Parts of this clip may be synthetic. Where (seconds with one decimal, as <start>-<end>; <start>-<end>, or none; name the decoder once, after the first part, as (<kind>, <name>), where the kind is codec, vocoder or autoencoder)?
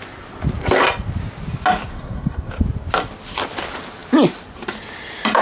1.9-2.5 (codec, SNAC)